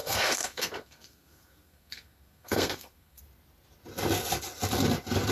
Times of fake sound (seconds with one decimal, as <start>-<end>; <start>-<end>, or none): 0.0-3.2